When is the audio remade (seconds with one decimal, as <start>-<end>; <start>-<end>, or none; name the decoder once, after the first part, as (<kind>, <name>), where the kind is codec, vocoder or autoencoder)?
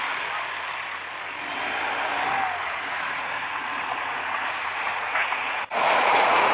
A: 2.6-6.5 (vocoder, Vocos)